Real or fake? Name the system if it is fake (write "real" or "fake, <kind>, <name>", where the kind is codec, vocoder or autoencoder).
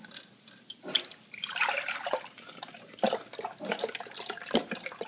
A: real